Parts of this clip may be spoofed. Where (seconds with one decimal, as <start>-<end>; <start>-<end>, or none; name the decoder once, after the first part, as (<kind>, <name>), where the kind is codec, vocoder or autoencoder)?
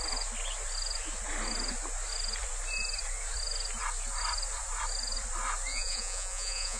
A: 5.7-6.8 (vocoder, Vocos)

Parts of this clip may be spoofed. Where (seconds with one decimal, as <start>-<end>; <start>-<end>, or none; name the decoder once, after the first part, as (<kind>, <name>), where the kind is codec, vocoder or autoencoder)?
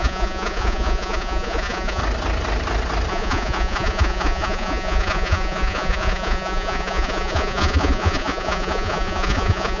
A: 0.0-2.0 (vocoder, Vocos); 3.1-9.8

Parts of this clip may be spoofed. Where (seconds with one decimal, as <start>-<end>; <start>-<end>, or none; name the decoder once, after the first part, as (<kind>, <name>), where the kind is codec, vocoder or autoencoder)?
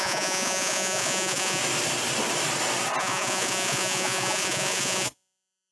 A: 0.0-1.6 (vocoder, Vocos); 3.0-5.7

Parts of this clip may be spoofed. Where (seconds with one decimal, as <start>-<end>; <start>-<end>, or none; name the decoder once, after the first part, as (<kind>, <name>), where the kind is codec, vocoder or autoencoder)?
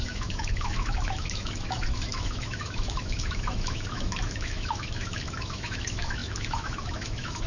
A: 0.0-7.5 (autoencoder, DAC-VAE)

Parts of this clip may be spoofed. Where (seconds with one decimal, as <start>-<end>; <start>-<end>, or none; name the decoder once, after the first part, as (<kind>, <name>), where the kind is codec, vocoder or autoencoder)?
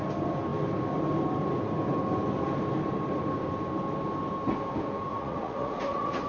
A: 5.1-6.3 (vocoder, Vocos)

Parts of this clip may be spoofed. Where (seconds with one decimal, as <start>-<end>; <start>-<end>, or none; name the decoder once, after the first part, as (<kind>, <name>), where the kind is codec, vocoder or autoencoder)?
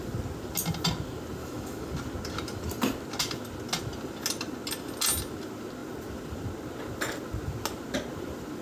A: 1.4-1.9 (autoencoder, DAC-VAE)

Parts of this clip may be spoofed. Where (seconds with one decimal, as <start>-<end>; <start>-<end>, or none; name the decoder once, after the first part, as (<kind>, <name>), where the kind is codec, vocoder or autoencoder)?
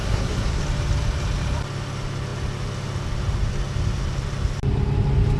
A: 0.0-0.6 (codec, SNAC)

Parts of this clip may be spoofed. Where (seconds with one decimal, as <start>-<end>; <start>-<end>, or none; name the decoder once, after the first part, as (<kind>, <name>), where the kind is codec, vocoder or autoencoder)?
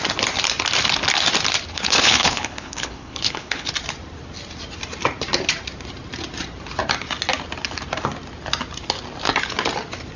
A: 1.7-3.7 (codec, HILCodec)